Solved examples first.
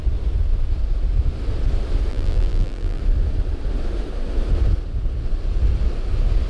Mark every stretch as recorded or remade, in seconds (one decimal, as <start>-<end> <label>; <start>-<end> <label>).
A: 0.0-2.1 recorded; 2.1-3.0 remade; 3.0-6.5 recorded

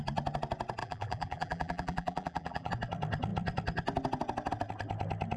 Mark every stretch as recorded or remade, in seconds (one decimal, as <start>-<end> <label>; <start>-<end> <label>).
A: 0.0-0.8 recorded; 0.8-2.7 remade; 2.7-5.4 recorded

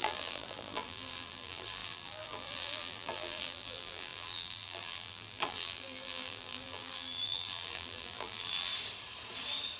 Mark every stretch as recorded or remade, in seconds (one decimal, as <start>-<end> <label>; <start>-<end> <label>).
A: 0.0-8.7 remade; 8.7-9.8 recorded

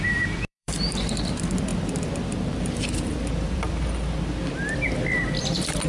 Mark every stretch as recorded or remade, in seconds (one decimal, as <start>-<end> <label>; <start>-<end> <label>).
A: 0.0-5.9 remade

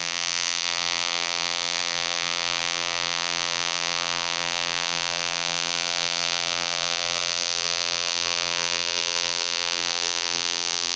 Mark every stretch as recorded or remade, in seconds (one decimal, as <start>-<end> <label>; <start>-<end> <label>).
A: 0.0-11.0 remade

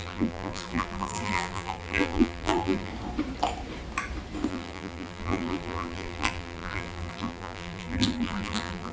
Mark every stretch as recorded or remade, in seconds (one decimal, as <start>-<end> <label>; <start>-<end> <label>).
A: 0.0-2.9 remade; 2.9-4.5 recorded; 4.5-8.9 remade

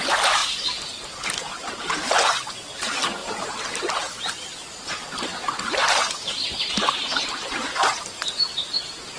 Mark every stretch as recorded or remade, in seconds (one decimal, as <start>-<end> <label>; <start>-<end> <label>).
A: 0.0-3.2 recorded; 3.2-5.0 remade; 5.0-9.2 recorded